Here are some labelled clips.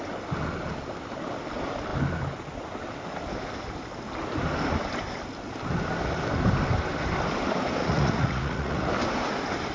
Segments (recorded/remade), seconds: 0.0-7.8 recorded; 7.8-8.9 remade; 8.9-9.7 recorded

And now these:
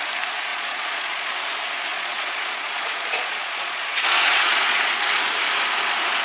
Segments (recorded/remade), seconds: 0.0-0.5 recorded; 0.5-1.3 remade; 1.3-1.9 recorded; 1.9-4.8 remade; 4.8-6.2 recorded

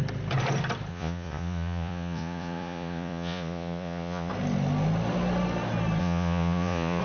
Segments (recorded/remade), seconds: 0.0-0.9 recorded; 0.9-4.3 remade; 4.3-6.0 recorded; 6.0-7.0 remade

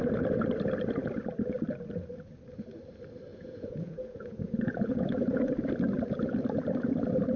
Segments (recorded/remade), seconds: 0.0-3.3 recorded; 3.3-5.5 remade; 5.5-7.4 recorded

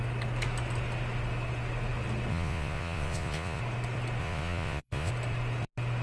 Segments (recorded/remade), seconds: 0.0-2.3 recorded; 2.3-3.6 remade; 3.6-4.2 recorded; 4.2-5.1 remade; 5.1-6.0 recorded

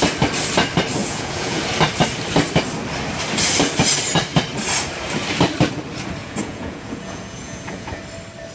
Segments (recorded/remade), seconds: 0.0-1.0 recorded; 1.0-1.6 remade; 1.6-6.2 recorded; 6.2-8.0 remade; 8.0-8.5 recorded

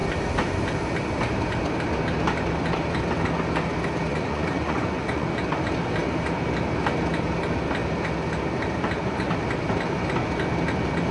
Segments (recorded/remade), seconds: 0.0-4.1 recorded; 4.1-5.3 remade; 5.3-11.1 recorded